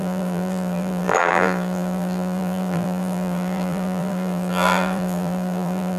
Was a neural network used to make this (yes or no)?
yes